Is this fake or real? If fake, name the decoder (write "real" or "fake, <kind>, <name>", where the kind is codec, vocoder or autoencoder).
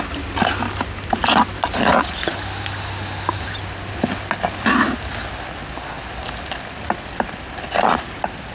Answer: real